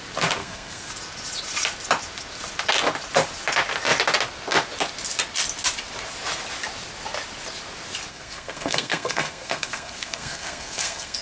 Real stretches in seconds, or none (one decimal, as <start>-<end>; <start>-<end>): 0.0-0.4; 0.9-8.1